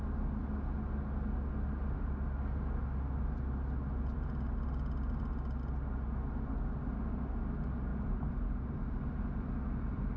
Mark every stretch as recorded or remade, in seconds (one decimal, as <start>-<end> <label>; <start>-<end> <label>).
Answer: 0.0-7.9 recorded; 7.9-10.2 remade